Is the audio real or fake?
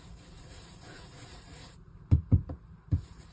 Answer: fake